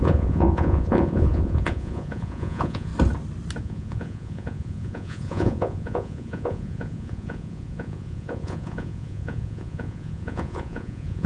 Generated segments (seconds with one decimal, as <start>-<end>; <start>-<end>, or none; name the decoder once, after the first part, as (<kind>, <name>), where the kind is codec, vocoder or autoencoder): 0.0-2.9 (vocoder, Vocos); 3.6-11.3